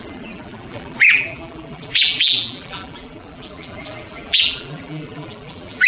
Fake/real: fake